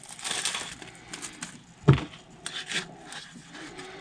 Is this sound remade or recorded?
recorded